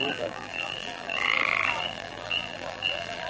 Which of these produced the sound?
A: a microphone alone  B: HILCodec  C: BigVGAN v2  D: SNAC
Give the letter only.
C